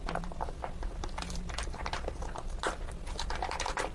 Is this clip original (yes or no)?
yes